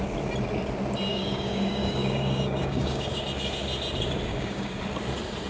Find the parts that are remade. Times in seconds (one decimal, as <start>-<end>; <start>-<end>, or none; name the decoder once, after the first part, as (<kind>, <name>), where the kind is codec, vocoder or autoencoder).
1.1-3.2 (codec, DAC); 4.3-4.8